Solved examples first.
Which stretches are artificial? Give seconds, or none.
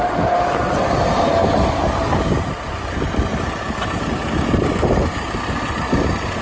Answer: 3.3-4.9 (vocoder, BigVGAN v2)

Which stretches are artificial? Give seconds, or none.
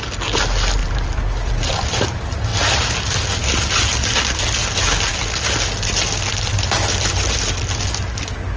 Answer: 0.8-1.7 (vocoder, BigVGAN v2)